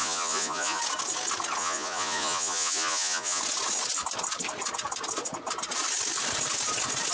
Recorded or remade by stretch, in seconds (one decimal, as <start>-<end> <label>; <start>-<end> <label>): 0.0-0.8 remade; 0.8-1.6 recorded; 1.6-3.4 remade; 3.4-7.1 recorded